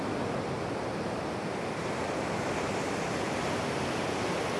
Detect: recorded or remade recorded